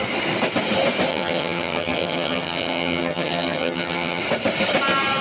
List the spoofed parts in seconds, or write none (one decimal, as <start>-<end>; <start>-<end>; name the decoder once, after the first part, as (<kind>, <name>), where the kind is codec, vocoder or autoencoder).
1.1-4.2 (vocoder, HiFi-GAN)